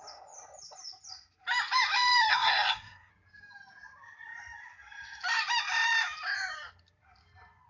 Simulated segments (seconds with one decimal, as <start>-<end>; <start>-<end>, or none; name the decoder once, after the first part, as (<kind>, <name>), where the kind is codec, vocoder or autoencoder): 2.3-3.1 (codec, SNAC)